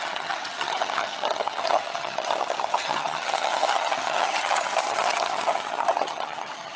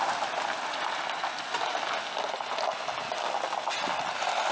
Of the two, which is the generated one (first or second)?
first